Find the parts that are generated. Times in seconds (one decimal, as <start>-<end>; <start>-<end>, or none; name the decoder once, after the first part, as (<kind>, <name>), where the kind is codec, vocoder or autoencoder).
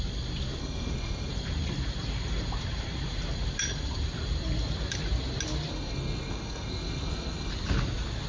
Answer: 0.6-1.3 (codec, SNAC); 5.7-7.5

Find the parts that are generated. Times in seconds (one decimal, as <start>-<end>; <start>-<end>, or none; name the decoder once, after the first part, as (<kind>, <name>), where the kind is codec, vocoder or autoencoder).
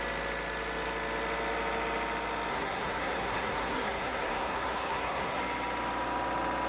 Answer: 2.5-5.4 (codec, SNAC)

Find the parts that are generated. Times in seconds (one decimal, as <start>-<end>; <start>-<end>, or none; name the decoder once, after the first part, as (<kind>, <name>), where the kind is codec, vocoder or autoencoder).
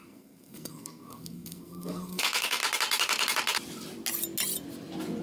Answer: 0.0-2.6 (codec, SNAC)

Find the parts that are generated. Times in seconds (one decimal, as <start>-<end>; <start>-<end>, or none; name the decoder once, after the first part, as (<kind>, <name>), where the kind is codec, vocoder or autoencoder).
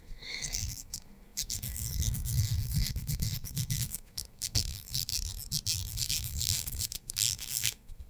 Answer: 0.0-5.1 (codec, SNAC); 5.9-8.1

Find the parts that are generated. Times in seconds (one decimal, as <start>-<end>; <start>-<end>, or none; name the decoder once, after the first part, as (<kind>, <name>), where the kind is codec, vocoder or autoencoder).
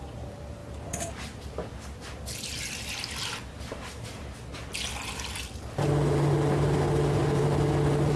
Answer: none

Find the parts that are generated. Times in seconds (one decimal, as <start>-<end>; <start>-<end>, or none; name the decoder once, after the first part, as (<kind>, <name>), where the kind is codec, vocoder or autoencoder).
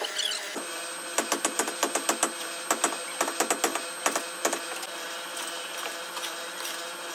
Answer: none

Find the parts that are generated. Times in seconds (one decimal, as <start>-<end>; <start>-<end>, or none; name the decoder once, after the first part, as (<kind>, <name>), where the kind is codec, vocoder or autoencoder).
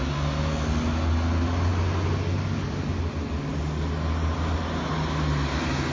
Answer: none